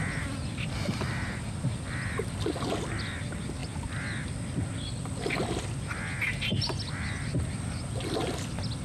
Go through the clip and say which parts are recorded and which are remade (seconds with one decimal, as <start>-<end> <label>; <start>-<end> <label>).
0.0-8.8 recorded